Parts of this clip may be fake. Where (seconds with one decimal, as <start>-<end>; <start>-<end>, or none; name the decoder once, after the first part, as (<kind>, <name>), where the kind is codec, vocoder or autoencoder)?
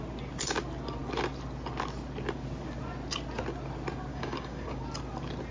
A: 4.1-4.8 (codec, DAC)